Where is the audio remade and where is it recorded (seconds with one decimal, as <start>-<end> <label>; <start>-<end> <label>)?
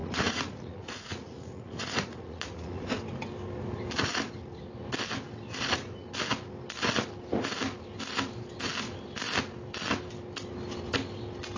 0.0-2.9 remade; 2.9-11.6 recorded